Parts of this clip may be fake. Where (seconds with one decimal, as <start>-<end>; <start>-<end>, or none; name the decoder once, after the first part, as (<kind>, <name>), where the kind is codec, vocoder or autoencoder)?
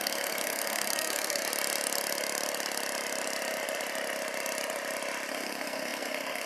0.0-1.4 (codec, SNAC); 5.3-6.5